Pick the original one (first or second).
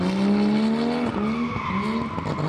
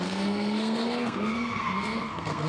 first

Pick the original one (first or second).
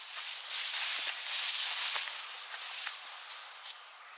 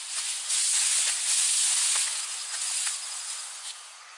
first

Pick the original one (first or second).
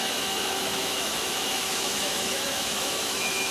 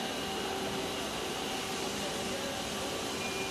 second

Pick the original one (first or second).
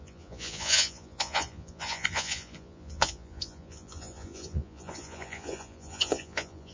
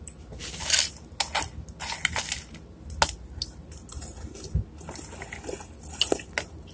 second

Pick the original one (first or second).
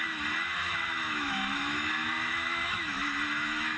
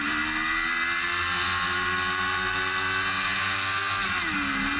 second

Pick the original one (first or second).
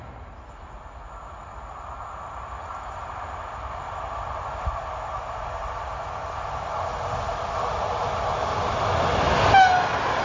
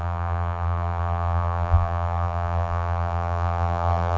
first